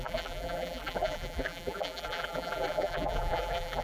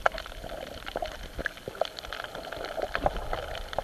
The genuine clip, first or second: second